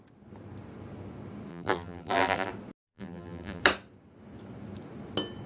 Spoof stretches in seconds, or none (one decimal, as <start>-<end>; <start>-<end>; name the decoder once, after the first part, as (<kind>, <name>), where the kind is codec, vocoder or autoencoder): 1.5-2.5 (vocoder, BigVGAN v2); 2.9-3.6